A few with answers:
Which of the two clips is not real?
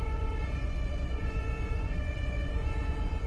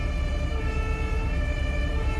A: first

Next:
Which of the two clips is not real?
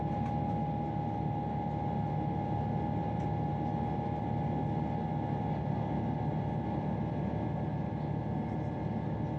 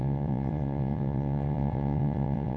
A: second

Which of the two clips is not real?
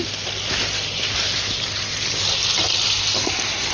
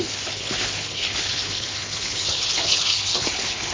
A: second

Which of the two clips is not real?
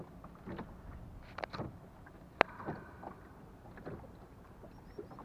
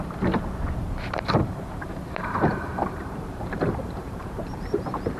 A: second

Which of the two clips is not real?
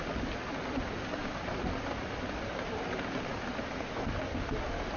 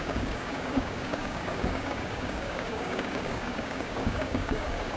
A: second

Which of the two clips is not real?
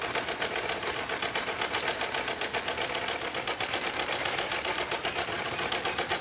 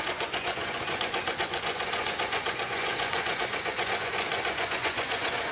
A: second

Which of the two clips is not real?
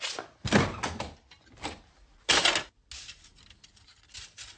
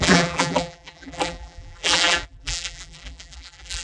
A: second